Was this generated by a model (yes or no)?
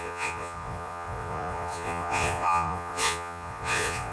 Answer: yes